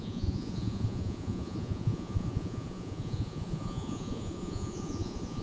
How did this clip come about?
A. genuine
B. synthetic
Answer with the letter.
B